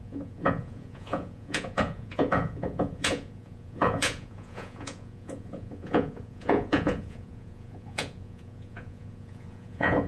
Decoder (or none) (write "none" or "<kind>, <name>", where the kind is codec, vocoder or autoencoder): vocoder, Vocos